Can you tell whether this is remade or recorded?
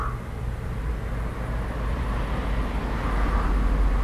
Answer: recorded